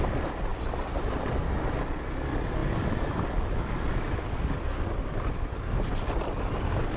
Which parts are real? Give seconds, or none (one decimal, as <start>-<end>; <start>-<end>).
0.0-7.0